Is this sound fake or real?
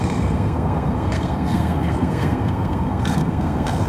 fake